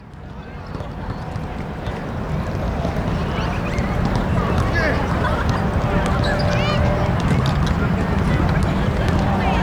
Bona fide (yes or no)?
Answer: yes